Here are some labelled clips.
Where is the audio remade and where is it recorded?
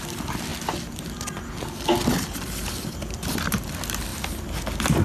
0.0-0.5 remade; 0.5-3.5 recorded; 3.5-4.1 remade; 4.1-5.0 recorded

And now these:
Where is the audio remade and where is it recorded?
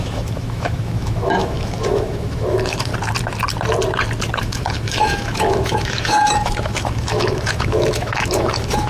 0.0-2.9 remade; 2.9-4.4 recorded; 4.4-8.9 remade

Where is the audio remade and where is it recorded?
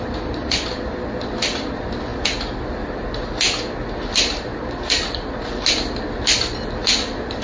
0.0-7.4 recorded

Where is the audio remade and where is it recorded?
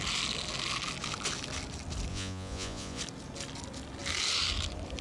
0.0-2.1 recorded; 2.1-3.0 remade; 3.0-5.0 recorded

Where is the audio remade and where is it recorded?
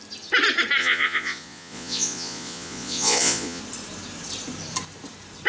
0.0-0.8 recorded; 0.8-3.6 remade; 3.6-5.5 recorded